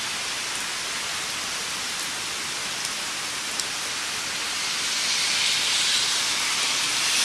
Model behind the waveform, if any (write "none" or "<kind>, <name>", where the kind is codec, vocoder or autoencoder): none